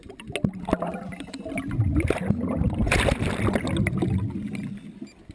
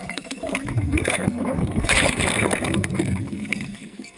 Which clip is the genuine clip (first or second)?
first